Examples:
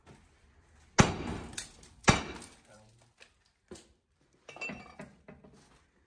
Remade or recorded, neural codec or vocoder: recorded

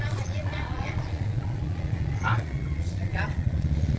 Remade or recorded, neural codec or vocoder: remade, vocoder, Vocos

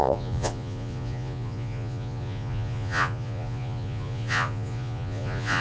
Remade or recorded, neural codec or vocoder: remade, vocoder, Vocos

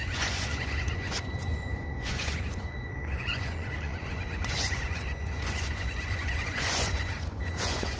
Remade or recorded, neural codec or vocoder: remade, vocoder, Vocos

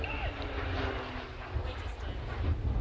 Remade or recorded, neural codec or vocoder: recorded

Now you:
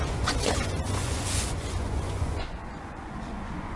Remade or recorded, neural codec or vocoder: remade, vocoder, Vocos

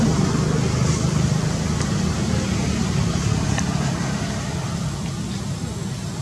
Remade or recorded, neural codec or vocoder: recorded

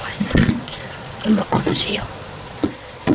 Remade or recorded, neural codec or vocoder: remade, vocoder, Vocos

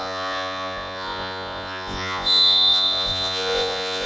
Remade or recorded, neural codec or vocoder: remade, vocoder, Vocos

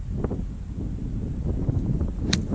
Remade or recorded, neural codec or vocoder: recorded